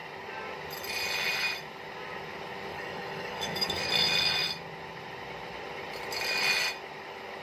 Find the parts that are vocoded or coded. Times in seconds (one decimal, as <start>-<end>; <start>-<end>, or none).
2.7-3.9